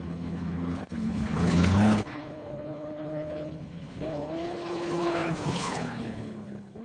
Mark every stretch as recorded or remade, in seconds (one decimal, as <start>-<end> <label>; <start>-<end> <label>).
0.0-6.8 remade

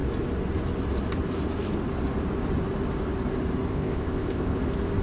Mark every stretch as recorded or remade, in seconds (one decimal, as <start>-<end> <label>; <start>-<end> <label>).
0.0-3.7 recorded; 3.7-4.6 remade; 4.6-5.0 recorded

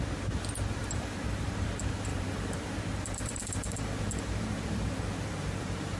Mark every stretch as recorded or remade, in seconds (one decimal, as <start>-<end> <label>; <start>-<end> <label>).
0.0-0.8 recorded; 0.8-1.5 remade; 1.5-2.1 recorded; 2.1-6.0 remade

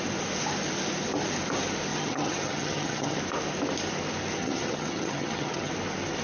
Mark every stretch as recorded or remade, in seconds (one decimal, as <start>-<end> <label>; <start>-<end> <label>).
0.0-1.9 recorded; 1.9-3.2 remade; 3.2-4.4 recorded; 4.4-5.7 remade; 5.7-6.2 recorded

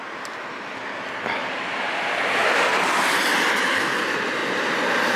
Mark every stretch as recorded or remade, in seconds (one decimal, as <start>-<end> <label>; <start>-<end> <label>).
0.0-1.4 recorded; 1.4-2.7 remade; 2.7-5.2 recorded

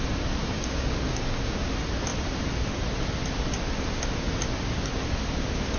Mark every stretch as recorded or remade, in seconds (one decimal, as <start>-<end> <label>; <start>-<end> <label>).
0.0-0.4 recorded; 0.4-1.7 remade; 1.7-5.8 recorded

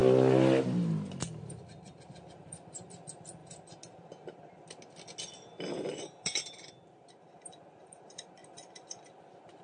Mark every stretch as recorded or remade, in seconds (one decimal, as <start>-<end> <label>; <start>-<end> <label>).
0.0-1.4 recorded; 1.4-3.4 remade; 3.4-6.0 recorded; 6.0-8.4 remade; 8.4-9.2 recorded; 9.2-9.6 remade

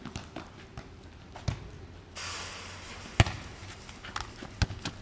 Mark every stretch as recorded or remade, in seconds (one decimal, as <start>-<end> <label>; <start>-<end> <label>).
0.0-5.0 recorded